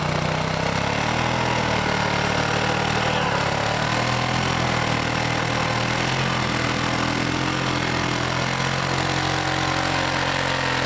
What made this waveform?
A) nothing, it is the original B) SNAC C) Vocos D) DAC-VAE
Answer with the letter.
A